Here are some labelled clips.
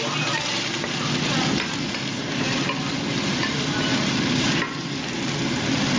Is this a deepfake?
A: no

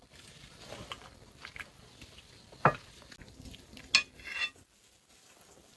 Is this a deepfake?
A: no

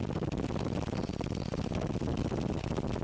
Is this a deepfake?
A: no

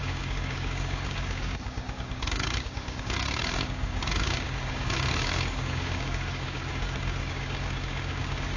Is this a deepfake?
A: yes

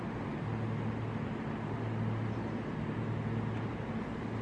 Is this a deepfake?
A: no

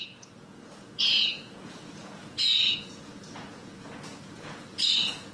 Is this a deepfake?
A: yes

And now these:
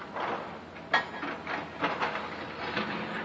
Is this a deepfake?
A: no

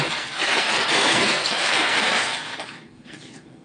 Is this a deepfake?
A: yes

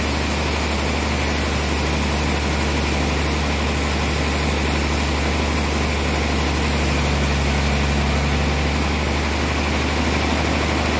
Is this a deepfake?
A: no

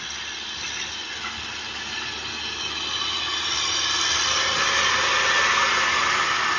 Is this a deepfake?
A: no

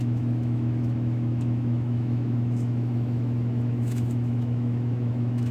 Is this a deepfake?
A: yes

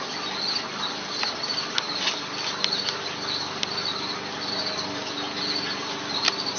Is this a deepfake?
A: no